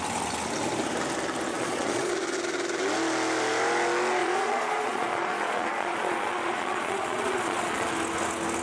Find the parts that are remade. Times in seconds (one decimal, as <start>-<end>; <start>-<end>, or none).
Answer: 1.5-2.1; 4.2-7.9